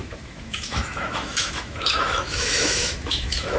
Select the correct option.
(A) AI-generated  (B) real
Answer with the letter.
A